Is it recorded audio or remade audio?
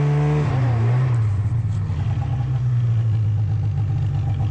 recorded